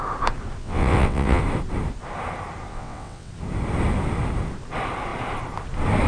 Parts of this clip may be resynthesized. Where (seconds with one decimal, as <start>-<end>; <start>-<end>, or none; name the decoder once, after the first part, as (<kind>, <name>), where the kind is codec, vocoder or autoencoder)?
0.6-1.4 (vocoder, WaveNeXt); 2.7-3.3